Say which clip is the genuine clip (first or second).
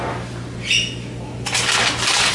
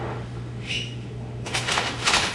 first